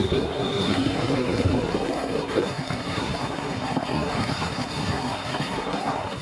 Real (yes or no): no